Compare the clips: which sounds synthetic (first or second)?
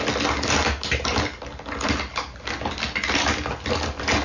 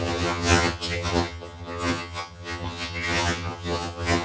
second